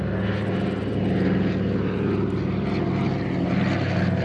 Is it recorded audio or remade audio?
recorded